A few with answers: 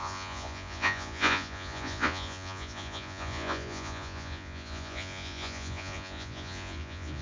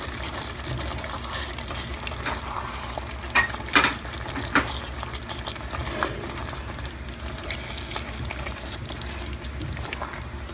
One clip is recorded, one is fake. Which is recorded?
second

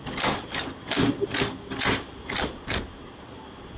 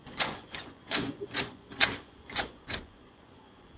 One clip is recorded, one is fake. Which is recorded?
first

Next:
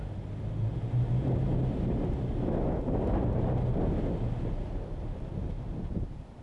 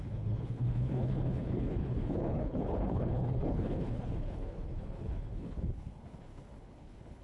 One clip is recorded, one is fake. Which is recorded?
first